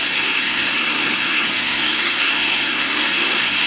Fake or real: fake